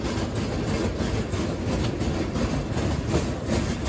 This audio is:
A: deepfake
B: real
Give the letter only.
B